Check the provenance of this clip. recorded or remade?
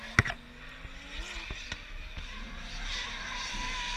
recorded